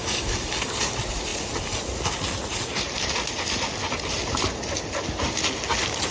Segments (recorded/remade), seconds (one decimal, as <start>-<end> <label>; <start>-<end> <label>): 0.0-6.1 recorded